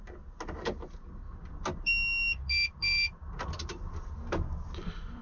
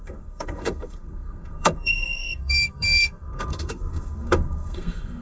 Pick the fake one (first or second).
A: second